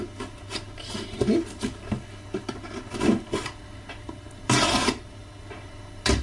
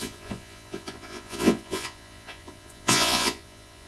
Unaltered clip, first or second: first